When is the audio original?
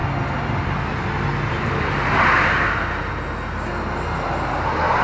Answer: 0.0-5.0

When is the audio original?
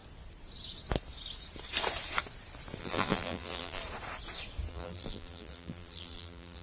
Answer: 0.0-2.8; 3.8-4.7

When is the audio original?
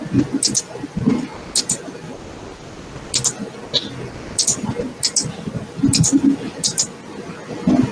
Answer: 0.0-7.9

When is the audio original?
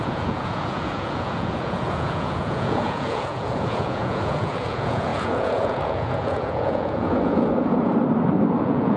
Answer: 7.9-8.6